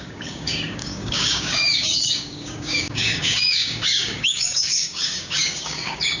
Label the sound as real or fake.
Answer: fake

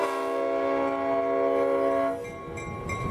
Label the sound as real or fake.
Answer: real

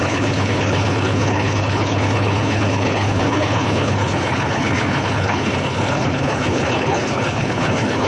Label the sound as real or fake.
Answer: fake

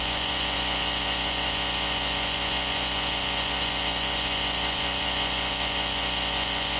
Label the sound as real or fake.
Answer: fake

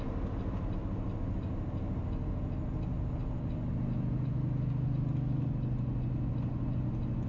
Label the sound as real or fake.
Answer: real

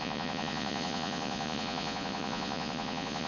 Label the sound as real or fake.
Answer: fake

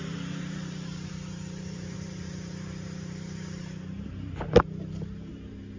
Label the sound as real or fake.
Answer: fake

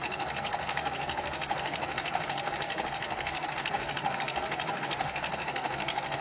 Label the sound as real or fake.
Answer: fake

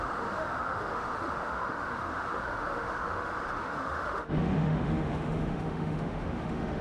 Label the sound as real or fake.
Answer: fake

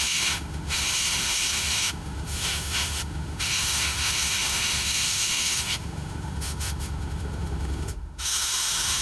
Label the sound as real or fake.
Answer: fake